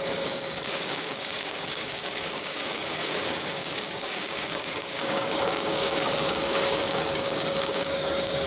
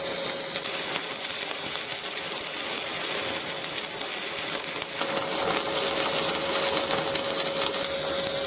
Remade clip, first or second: first